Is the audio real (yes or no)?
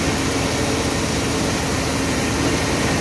yes